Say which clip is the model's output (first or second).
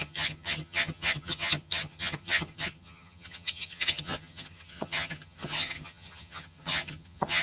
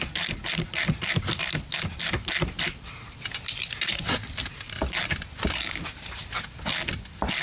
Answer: first